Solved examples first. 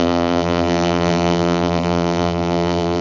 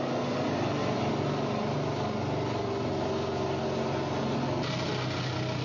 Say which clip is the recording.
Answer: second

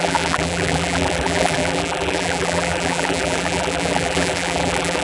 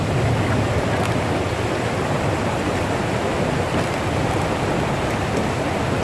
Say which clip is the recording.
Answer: second